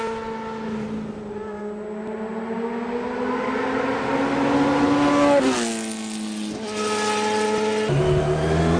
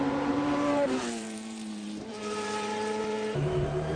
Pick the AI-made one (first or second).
second